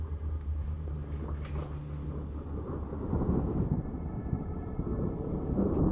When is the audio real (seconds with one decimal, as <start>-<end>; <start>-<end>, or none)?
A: 1.0-3.4